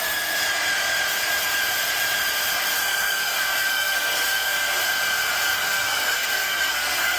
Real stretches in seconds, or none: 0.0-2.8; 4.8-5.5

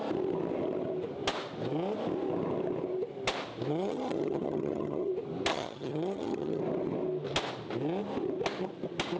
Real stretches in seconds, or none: 0.0-3.7; 5.1-5.5; 6.6-9.2